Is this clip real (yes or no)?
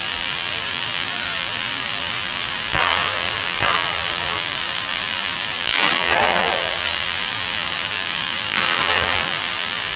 no